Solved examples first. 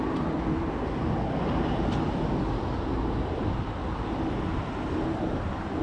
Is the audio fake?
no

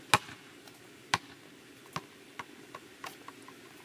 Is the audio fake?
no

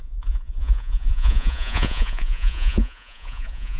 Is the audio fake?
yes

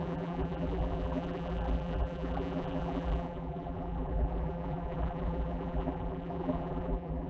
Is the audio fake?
yes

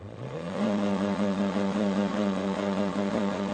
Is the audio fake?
yes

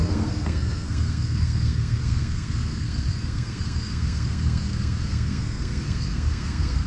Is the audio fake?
yes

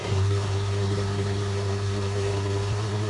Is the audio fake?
yes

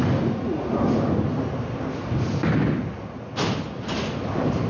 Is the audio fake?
no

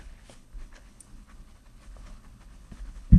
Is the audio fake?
yes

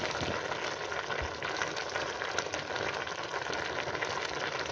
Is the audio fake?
no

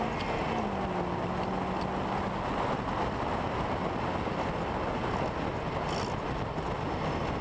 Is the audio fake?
no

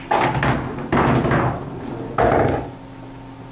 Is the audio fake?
no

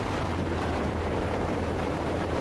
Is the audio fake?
yes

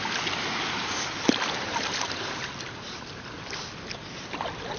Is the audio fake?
no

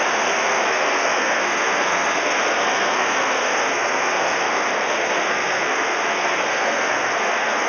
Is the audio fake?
yes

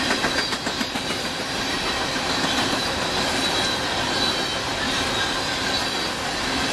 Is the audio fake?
no